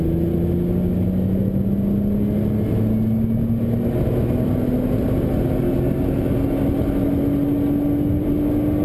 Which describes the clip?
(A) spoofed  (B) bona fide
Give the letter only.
B